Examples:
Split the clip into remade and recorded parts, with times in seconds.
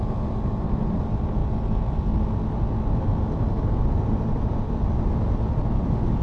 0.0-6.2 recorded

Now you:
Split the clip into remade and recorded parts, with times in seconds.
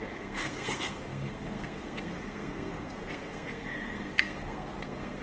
0.0-5.2 remade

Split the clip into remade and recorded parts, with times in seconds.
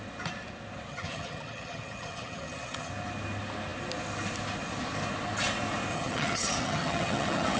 0.0-0.9 recorded; 0.9-2.9 remade; 2.9-5.9 recorded; 5.9-7.6 remade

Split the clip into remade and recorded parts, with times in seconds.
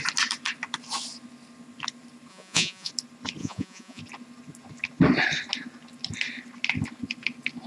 0.0-2.3 recorded; 2.3-2.9 remade; 2.9-3.4 recorded; 3.4-4.0 remade; 4.0-7.7 recorded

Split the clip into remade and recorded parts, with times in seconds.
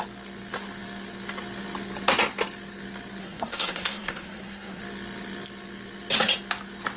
0.0-3.2 recorded; 3.2-4.8 remade; 4.8-7.0 recorded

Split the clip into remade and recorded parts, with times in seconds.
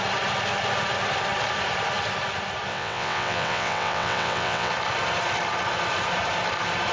0.0-2.7 recorded; 2.7-4.7 remade; 4.7-6.9 recorded